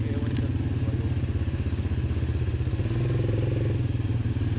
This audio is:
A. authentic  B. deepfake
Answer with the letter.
A